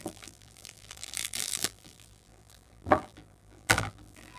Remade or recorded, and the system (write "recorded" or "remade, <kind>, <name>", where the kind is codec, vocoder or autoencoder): remade, vocoder, BigVGAN v2